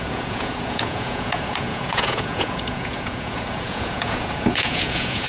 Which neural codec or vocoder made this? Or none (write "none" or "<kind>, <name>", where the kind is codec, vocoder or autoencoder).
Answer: vocoder, Vocos